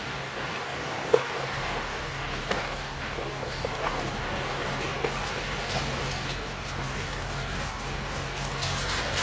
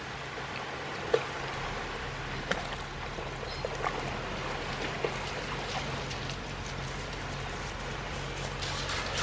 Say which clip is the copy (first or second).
first